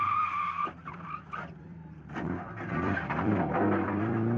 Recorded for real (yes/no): no